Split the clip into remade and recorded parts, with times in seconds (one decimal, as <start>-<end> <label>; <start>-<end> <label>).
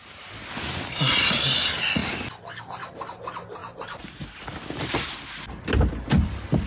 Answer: 0.0-6.7 recorded